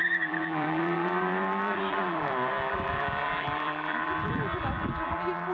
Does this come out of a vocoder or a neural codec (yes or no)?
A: yes